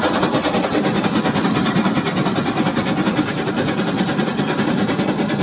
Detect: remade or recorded remade